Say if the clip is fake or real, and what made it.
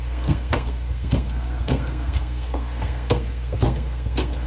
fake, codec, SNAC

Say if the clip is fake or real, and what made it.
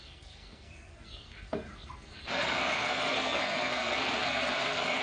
fake, codec, SNAC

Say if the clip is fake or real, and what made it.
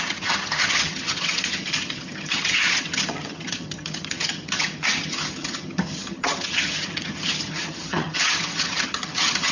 fake, vocoder, HiFi-GAN